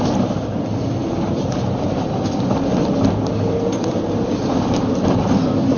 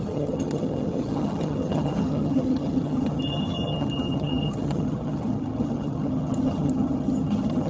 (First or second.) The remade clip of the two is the second